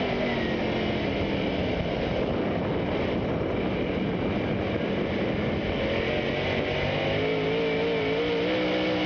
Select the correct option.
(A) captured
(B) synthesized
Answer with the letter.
A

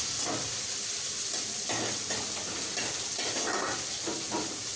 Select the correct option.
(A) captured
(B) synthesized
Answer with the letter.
A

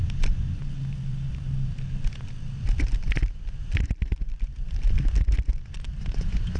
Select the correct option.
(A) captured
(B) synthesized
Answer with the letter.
A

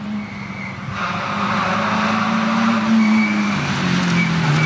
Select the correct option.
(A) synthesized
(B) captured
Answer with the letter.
B